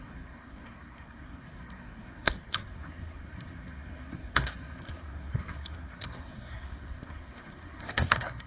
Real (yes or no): no